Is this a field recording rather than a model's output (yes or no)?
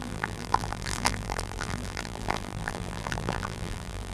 no